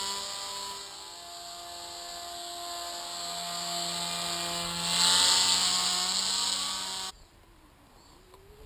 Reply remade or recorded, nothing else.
recorded